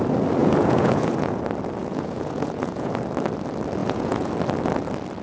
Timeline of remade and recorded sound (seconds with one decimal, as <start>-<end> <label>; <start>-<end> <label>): 0.0-0.4 recorded; 0.4-1.4 remade; 1.4-1.8 recorded; 1.8-3.0 remade; 3.0-3.8 recorded; 3.8-4.3 remade; 4.3-5.2 recorded